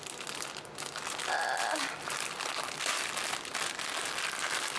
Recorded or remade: recorded